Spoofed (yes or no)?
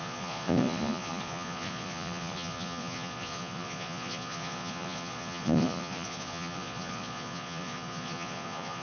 yes